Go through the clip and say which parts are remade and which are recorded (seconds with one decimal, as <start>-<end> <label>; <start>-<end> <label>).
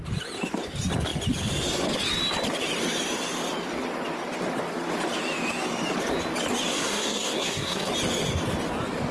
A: 0.0-6.7 recorded; 6.7-7.9 remade; 7.9-9.1 recorded